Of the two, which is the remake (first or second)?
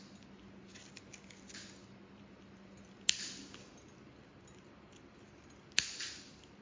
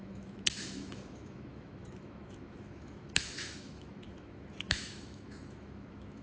second